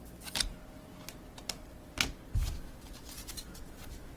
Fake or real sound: real